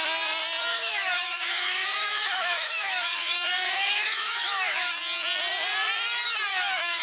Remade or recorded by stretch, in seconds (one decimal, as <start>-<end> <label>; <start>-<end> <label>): 0.0-0.7 recorded; 0.7-4.9 remade; 4.9-6.5 recorded; 6.5-7.0 remade